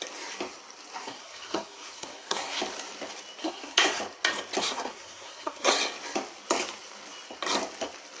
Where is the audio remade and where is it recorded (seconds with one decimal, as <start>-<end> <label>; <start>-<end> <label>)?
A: 0.0-1.0 recorded; 1.0-2.6 remade; 2.6-3.4 recorded; 3.4-4.0 remade; 4.0-4.6 recorded; 4.6-5.7 remade; 5.7-8.2 recorded